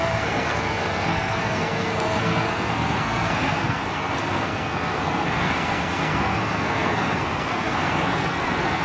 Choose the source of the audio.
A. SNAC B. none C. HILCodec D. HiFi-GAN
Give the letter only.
A